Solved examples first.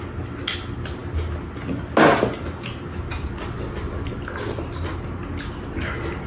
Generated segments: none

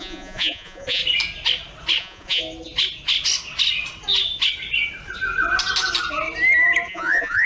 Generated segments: 0.0-1.0 (vocoder, Vocos); 2.0-2.4; 6.9-7.5